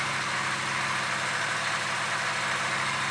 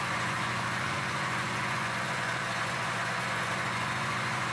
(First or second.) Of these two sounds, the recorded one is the first